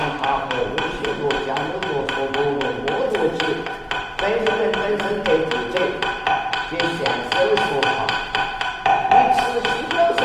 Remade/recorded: recorded